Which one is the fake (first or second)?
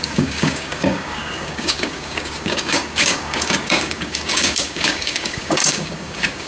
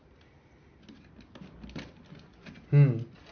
first